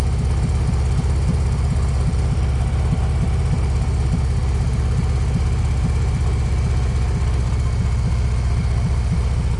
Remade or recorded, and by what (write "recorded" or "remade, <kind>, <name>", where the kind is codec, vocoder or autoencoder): recorded